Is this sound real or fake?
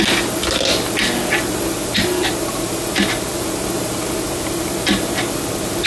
real